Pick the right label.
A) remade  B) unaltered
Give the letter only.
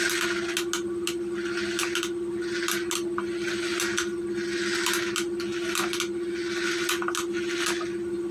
B